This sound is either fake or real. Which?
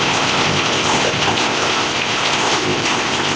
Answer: fake